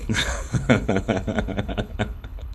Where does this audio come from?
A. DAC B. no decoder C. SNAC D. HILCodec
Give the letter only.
D